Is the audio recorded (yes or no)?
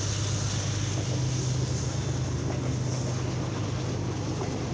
yes